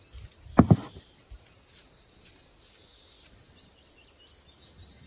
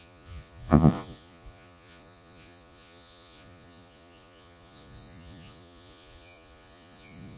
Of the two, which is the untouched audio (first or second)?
first